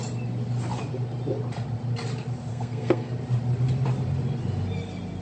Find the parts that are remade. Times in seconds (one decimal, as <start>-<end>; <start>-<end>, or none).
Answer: 2.5-3.1